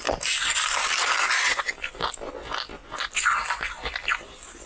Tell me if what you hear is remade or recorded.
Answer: recorded